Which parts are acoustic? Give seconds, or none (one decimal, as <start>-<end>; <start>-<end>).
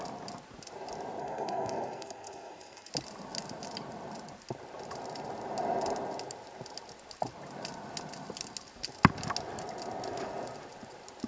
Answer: 0.0-1.2; 2.9-11.3